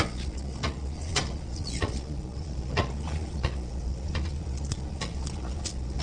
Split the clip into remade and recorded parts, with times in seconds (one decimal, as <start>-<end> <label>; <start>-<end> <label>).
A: 0.0-6.0 remade